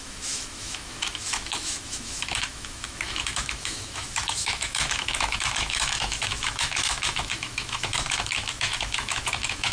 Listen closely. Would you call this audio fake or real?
fake